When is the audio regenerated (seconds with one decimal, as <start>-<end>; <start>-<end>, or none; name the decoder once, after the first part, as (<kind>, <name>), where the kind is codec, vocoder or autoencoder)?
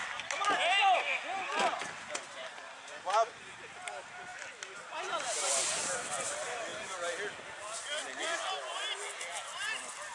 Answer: none